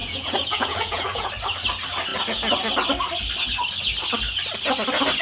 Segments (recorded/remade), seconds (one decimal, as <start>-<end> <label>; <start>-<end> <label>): 0.0-1.3 remade; 1.3-5.2 recorded